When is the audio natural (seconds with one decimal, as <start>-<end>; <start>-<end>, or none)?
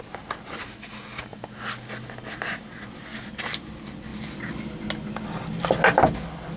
0.0-6.6